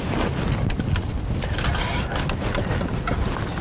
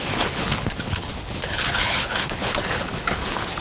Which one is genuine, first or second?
first